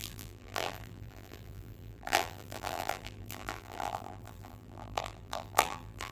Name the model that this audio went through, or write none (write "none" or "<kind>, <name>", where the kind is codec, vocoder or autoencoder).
vocoder, BigVGAN v2